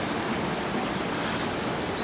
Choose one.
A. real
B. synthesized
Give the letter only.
A